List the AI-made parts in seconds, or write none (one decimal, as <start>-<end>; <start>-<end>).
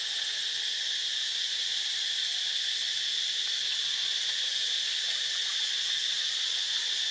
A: none